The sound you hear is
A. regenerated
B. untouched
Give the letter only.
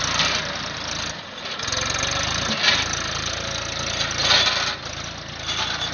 B